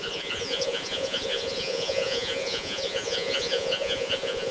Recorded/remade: remade